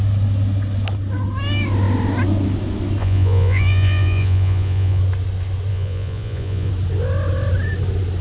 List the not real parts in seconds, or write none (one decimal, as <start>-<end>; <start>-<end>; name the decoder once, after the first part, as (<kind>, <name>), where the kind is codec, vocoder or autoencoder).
3.0-5.0 (vocoder, Vocos); 5.7-6.7